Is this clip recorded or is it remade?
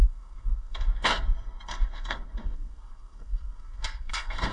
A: remade